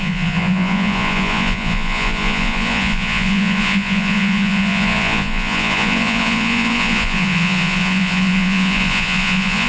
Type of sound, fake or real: fake